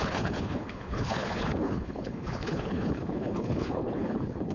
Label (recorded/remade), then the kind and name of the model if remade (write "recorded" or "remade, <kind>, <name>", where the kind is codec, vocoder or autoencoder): remade, codec, HILCodec